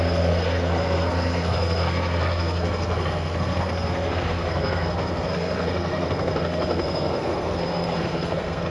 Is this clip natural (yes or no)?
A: no